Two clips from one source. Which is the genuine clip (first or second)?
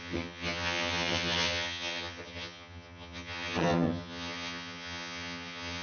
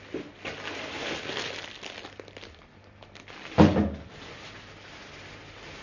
second